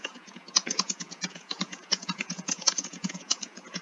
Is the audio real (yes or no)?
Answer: no